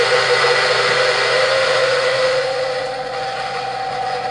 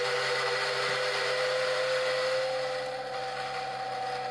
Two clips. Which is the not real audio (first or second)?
first